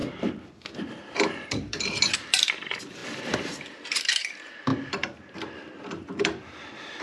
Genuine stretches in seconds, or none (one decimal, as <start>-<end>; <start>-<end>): none